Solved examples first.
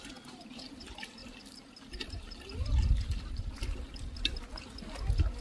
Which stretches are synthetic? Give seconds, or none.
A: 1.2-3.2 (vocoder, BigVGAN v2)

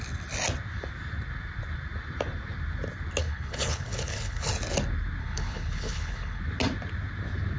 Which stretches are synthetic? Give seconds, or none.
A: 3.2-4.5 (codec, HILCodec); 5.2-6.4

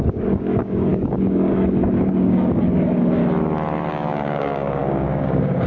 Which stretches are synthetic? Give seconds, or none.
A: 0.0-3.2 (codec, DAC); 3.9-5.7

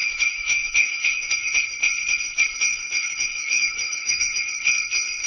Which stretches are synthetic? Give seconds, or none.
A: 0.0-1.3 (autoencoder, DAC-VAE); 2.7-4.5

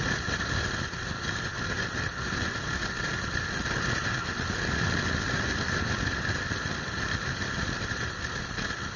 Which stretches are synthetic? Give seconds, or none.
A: none